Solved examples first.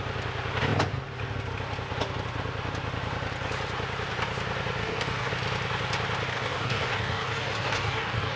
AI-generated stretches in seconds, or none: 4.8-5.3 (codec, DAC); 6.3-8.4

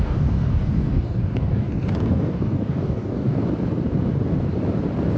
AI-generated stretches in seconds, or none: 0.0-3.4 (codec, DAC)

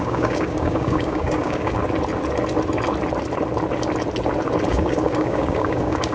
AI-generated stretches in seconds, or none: 0.0-1.8 (codec, DAC); 4.7-6.1